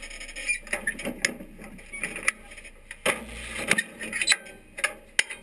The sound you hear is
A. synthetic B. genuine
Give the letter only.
B